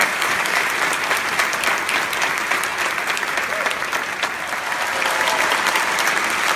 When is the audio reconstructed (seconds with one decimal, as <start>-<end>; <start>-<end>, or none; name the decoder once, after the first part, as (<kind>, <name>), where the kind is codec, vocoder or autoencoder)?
0.0-0.7 (codec, DAC)